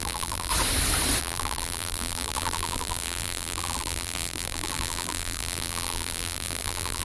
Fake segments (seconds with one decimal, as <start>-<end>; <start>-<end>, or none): 0.0-0.5; 1.2-7.0